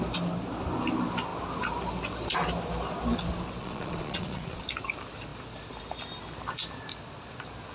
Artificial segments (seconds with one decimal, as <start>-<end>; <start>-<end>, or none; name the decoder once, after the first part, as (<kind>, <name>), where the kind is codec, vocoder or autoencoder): 3.6-4.6 (vocoder, Vocos)